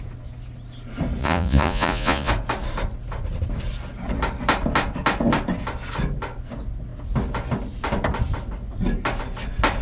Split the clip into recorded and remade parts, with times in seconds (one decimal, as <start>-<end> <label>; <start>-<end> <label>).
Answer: 0.0-1.2 recorded; 1.2-2.3 remade; 2.3-9.8 recorded